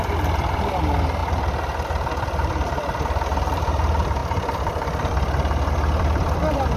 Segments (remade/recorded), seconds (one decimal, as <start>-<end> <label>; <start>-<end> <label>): 0.0-6.8 remade